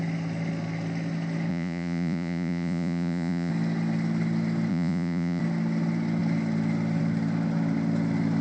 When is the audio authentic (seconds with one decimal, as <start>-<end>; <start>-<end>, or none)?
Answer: 0.0-1.5; 3.5-4.7; 5.4-8.4